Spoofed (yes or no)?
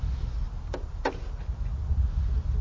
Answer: no